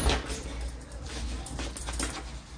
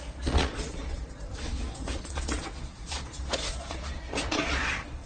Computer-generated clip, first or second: second